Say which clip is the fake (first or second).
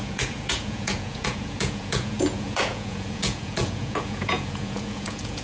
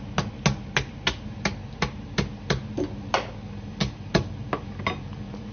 first